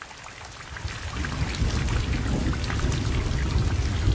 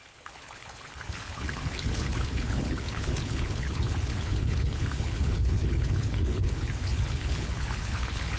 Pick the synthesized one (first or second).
second